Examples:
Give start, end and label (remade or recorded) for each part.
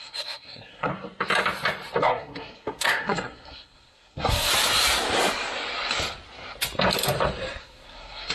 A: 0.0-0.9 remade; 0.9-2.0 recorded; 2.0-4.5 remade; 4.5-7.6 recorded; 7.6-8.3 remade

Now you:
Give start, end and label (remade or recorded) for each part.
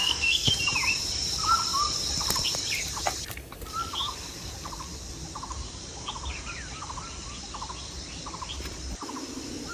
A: 0.0-0.5 remade; 0.5-9.7 recorded